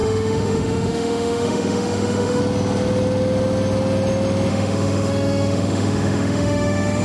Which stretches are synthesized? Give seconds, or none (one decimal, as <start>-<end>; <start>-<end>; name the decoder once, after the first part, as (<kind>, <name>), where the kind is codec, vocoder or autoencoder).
0.0-2.4 (autoencoder, DAC-VAE); 4.5-7.0